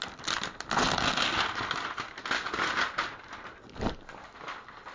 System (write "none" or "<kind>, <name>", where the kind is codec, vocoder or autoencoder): none